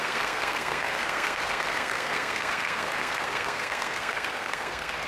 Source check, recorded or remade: remade